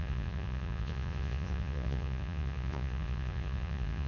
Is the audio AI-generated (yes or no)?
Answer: yes